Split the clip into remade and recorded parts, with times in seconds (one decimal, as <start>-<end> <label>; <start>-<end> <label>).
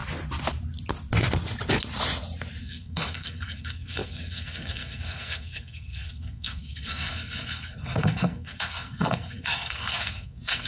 0.0-2.6 recorded; 2.6-10.7 remade